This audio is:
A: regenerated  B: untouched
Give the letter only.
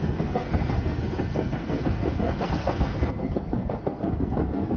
A